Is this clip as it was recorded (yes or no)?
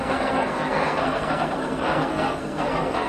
no